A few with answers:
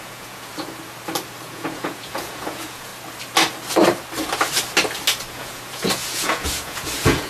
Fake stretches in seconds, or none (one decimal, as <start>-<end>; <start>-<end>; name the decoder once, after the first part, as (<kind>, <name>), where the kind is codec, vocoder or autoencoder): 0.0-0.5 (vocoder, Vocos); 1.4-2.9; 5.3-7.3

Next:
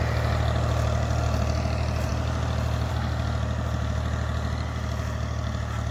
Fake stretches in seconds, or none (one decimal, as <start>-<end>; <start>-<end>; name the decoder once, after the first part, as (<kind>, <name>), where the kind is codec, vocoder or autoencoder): none

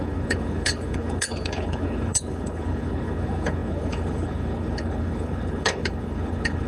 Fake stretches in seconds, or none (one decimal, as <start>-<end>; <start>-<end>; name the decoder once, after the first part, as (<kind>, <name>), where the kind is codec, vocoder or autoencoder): 0.0-6.7 (codec, HILCodec)

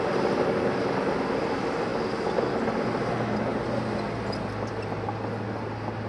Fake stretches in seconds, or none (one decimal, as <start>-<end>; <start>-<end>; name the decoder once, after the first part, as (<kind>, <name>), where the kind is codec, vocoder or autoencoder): none

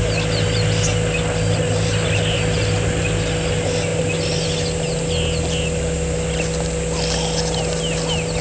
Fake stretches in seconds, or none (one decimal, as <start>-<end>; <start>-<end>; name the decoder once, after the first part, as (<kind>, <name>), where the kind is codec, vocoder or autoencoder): none

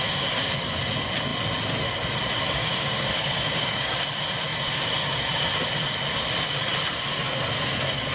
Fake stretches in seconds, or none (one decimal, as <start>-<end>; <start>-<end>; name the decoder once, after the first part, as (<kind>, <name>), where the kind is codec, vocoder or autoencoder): 2.6-4.0 (codec, DAC)

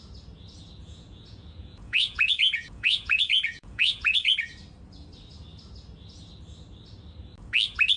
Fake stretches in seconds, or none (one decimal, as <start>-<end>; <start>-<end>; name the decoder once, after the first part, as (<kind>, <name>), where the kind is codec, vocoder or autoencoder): 0.8-4.3 (vocoder, Vocos)